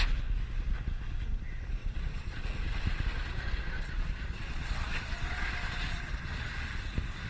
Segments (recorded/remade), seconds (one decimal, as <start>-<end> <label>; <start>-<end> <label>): 0.0-1.8 recorded; 1.8-2.4 remade; 2.4-3.1 recorded; 3.1-6.6 remade; 6.6-7.3 recorded